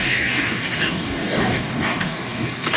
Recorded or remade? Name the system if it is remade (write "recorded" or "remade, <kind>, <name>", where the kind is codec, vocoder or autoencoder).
remade, codec, DAC